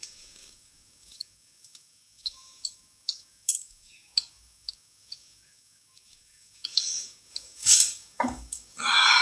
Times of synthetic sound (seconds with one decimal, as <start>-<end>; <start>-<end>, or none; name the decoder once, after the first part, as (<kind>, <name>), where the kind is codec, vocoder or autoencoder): 0.0-9.2 (codec, DAC)